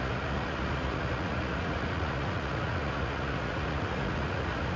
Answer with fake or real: fake